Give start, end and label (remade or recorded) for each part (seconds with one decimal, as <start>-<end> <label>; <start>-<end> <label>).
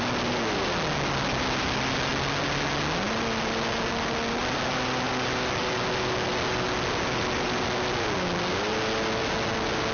0.0-9.9 recorded